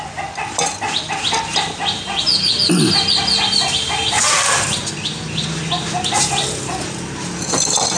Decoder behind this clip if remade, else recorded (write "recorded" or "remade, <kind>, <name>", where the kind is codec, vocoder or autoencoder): remade, vocoder, BigVGAN v2